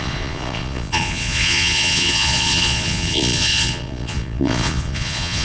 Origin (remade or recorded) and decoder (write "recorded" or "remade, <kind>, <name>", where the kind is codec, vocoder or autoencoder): remade, vocoder, Vocos